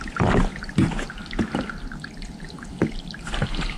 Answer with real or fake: real